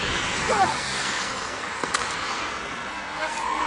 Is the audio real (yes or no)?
no